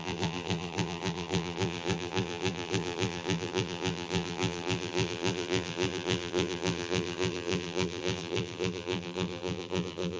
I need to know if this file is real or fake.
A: fake